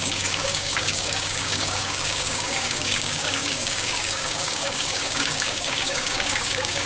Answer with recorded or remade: remade